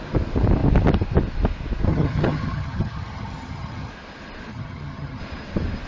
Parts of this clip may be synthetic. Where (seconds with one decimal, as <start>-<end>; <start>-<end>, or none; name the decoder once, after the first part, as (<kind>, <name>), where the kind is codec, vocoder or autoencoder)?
1.9-3.9 (vocoder, HiFi-GAN); 4.5-5.2